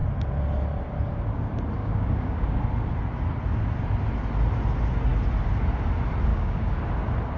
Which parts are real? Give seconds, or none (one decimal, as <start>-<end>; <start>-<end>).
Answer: 0.0-1.8; 2.6-6.3; 6.8-7.4